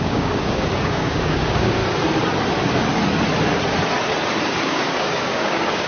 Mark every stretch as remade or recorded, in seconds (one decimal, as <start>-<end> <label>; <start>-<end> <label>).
0.0-1.8 remade; 1.8-4.6 recorded; 4.6-5.9 remade